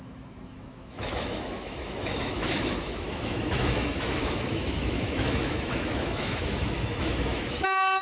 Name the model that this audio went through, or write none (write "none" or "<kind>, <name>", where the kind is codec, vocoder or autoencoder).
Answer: autoencoder, DAC-VAE